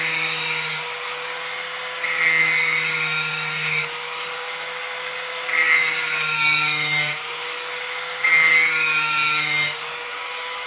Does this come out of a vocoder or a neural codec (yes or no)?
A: yes